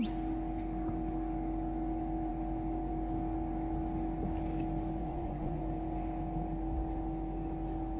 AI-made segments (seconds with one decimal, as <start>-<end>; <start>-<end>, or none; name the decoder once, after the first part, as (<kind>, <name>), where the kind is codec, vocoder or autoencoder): 5.0-5.6 (vocoder, Vocos)